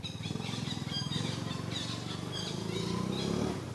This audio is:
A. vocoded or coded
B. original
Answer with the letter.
B